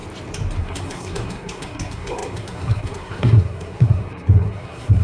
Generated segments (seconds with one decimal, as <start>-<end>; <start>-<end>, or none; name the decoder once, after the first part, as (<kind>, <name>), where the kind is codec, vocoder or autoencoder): 0.6-5.0 (codec, SNAC)

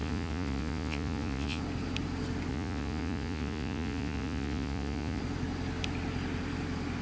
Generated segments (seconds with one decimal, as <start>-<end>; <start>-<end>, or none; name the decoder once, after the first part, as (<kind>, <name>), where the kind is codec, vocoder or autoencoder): 0.0-1.6 (vocoder, Vocos); 2.5-5.2

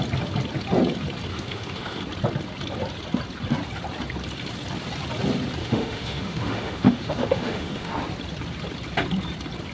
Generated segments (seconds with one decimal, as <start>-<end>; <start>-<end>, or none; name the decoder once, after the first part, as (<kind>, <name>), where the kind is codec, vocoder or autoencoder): 1.3-2.0 (autoencoder, DAC-VAE); 5.6-7.9

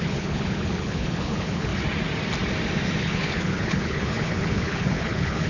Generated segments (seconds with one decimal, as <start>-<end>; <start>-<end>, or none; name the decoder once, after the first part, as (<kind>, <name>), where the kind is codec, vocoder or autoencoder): 0.0-1.7 (codec, HILCodec); 3.0-5.5

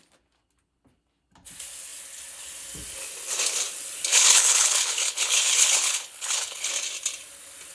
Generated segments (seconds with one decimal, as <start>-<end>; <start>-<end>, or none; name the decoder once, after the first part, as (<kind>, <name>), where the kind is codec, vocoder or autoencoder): 4.1-6.7 (codec, HILCodec)

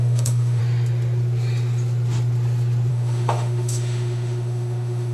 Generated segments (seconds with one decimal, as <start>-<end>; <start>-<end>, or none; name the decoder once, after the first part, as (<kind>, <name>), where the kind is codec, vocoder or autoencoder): 0.0-0.6 (autoencoder, DAC-VAE); 2.9-5.1

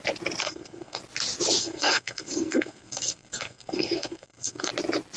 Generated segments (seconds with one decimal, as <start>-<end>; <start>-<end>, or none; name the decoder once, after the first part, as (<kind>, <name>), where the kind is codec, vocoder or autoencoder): 0.4-1.0 (codec, SNAC); 1.6-4.7

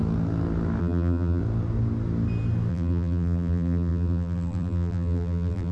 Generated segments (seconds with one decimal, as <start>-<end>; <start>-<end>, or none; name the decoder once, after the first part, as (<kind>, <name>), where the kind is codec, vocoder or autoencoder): 0.8-1.4 (vocoder, BigVGAN v2); 2.7-5.7